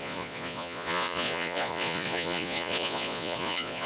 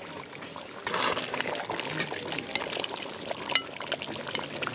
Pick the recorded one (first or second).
second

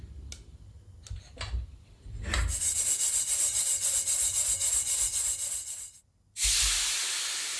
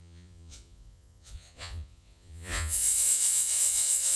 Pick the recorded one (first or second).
first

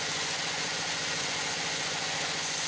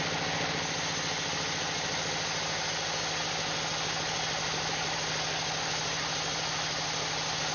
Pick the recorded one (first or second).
second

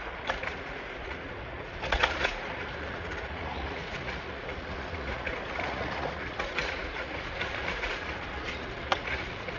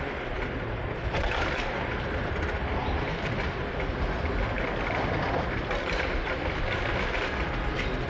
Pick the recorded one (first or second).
second